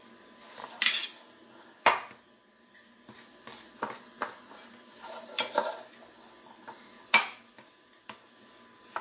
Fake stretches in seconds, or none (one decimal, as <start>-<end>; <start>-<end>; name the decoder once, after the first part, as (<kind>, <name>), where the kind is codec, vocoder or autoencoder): none